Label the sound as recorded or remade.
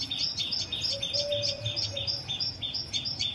recorded